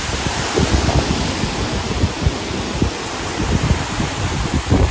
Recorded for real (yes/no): no